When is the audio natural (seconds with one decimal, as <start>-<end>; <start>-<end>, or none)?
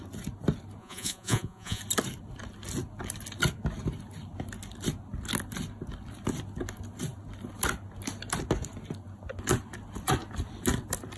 0.0-0.8; 1.8-11.2